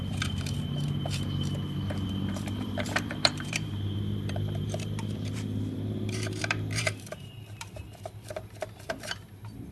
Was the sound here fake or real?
fake